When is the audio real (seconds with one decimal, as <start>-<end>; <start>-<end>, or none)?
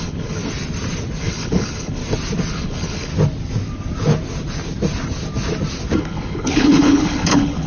0.4-1.2; 2.0-2.5; 3.1-6.0